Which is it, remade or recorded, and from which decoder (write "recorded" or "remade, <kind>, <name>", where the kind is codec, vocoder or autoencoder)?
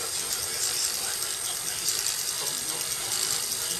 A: recorded